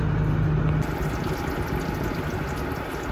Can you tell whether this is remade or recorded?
recorded